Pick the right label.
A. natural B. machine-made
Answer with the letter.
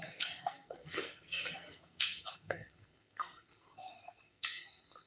B